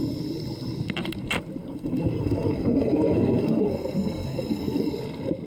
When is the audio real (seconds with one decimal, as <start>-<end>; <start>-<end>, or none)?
0.0-1.6; 4.9-5.5